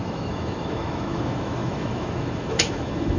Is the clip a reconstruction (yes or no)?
yes